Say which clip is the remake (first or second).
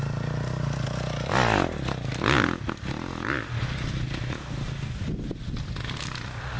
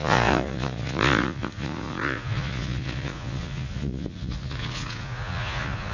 second